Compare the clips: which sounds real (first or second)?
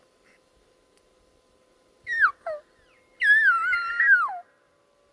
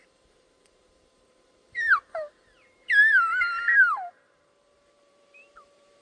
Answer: first